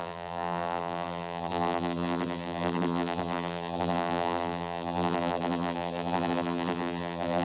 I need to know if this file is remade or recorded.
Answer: remade